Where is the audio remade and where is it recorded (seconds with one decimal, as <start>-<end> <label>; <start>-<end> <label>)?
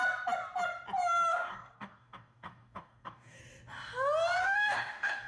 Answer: 0.0-1.3 recorded; 1.3-3.4 remade; 3.4-4.4 recorded; 4.4-5.3 remade